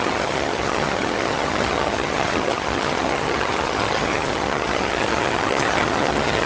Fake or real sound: fake